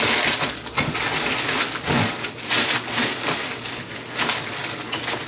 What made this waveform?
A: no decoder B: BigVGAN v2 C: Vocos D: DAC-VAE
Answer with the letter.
A